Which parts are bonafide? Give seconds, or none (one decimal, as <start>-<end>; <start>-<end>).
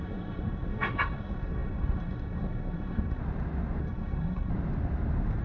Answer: 3.2-3.8; 4.5-5.4